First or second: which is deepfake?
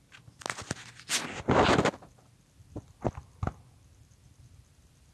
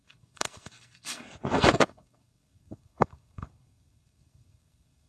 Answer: second